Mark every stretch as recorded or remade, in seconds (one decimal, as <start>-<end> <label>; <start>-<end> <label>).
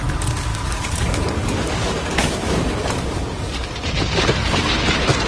0.0-0.5 recorded; 0.5-3.7 remade; 3.7-5.3 recorded